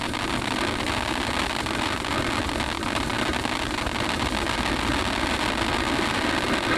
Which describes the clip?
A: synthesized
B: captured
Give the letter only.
B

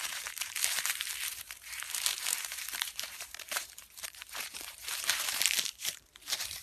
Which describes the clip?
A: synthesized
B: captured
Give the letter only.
A